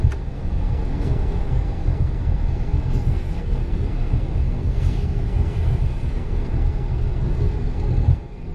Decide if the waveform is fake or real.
fake